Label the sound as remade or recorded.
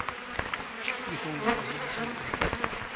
recorded